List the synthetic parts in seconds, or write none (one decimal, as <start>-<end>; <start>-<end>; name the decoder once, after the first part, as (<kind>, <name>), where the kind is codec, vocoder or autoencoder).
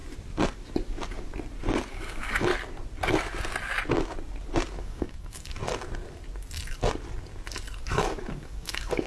1.9-2.5 (codec, DAC); 4.8-5.6; 7.8-9.1